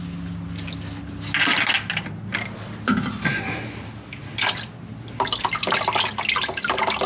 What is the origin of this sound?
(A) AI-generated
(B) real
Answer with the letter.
B